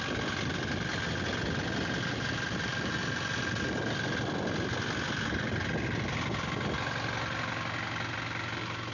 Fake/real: real